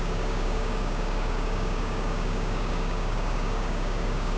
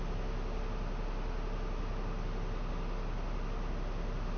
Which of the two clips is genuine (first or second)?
second